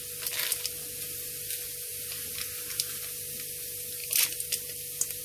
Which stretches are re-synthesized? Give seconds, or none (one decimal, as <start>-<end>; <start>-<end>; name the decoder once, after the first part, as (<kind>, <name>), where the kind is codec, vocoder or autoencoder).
none